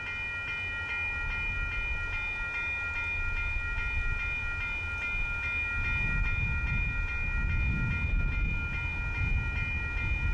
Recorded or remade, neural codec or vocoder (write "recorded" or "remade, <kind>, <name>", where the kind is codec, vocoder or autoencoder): recorded